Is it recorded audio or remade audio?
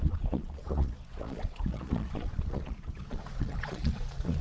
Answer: remade